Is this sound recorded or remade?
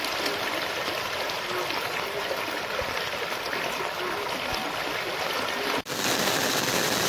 recorded